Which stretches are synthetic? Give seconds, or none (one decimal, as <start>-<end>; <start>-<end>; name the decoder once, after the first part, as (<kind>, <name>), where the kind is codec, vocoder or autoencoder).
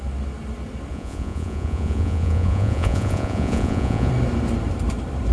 0.9-4.1 (vocoder, Vocos)